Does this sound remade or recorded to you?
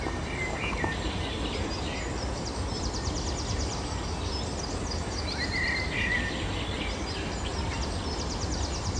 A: recorded